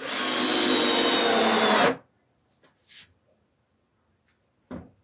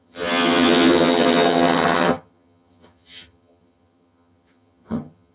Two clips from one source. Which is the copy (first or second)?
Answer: second